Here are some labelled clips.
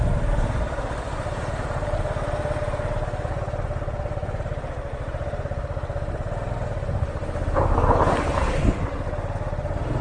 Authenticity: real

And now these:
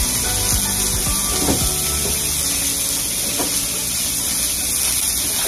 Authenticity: real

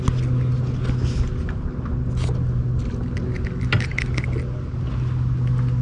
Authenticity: real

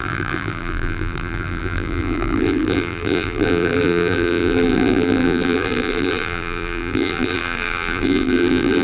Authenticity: fake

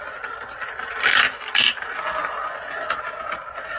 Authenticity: real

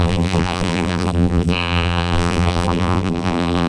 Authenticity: fake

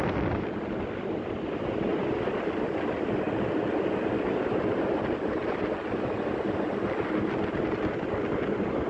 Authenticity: real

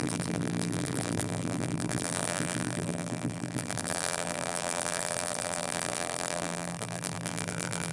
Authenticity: fake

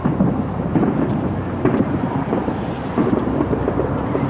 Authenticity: fake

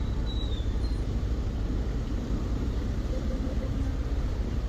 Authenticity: fake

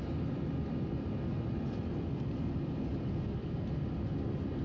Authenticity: fake